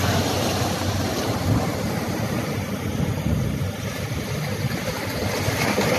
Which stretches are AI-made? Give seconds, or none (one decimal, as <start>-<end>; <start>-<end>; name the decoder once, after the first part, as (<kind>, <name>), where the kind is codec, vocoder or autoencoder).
1.1-1.9 (vocoder, BigVGAN v2)